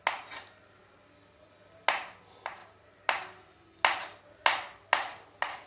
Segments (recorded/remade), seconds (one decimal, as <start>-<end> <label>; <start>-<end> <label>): 0.0-5.7 recorded